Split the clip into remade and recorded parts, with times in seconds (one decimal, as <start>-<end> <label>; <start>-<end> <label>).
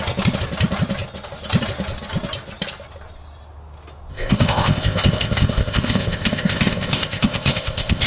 0.0-4.1 recorded; 4.1-8.1 remade